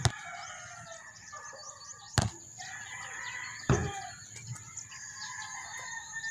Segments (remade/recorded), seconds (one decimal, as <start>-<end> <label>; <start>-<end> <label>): 0.0-6.3 recorded